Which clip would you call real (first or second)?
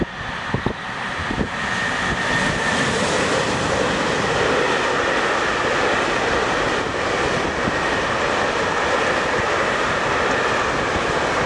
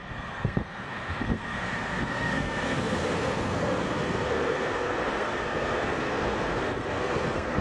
first